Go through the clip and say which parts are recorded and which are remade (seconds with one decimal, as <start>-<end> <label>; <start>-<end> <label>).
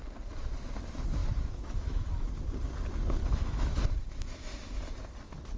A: 0.0-1.2 recorded; 1.2-2.3 remade; 2.3-3.2 recorded; 3.2-3.8 remade; 3.8-5.6 recorded